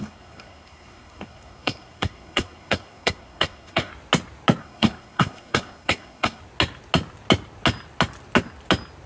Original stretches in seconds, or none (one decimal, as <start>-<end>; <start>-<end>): 3.9-4.6; 6.4-9.1